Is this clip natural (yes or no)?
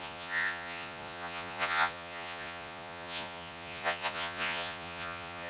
no